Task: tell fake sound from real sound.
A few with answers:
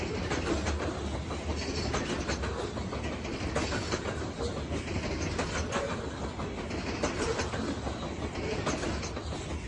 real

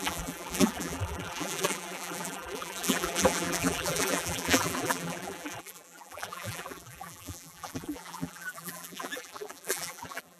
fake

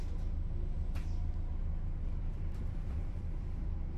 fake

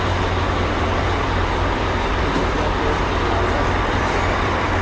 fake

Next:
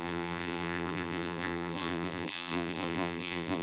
fake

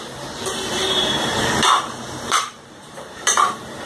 fake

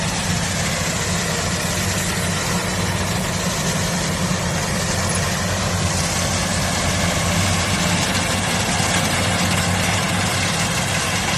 real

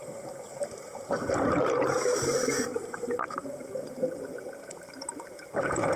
fake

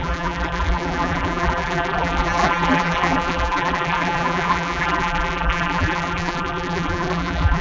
fake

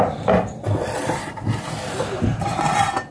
fake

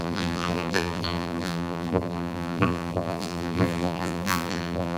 fake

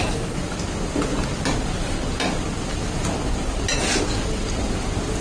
real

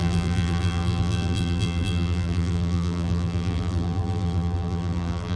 fake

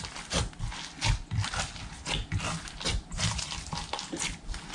real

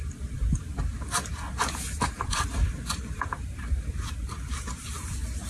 fake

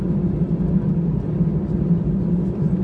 real